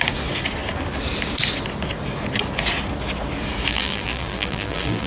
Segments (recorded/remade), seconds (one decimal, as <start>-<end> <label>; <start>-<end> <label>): 0.0-3.7 recorded; 3.7-5.1 remade